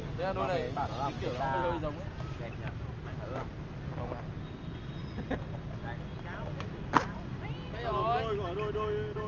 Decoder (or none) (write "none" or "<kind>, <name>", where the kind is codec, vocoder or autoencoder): none